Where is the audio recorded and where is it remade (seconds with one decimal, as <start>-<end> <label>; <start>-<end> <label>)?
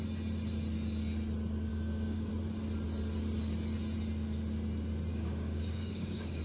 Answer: 0.0-1.7 recorded; 1.7-2.3 remade; 2.3-5.1 recorded; 5.1-6.4 remade